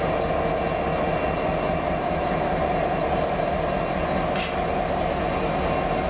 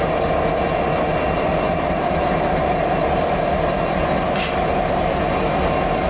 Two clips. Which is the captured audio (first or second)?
first